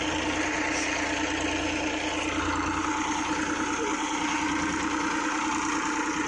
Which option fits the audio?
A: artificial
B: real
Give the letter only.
B